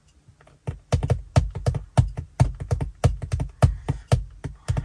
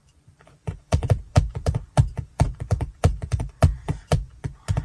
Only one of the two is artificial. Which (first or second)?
second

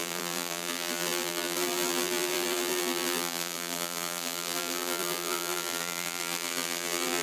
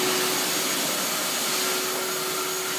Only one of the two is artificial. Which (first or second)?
first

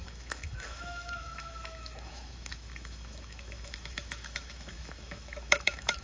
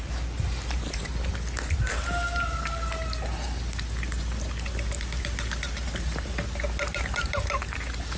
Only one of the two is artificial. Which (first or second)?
first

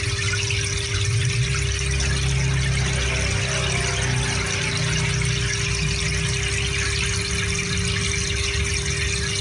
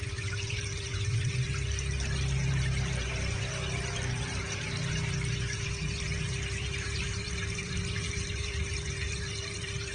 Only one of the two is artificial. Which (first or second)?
second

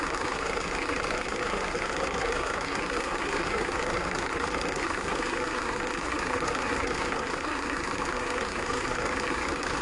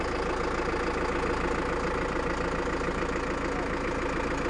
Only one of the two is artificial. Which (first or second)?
first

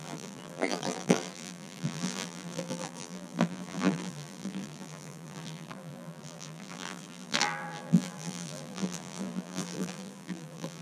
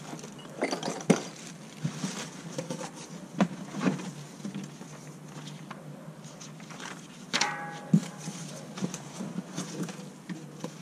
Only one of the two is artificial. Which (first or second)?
first